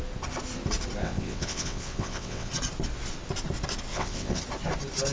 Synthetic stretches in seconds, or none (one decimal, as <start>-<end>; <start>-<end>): 1.0-2.5; 3.9-4.4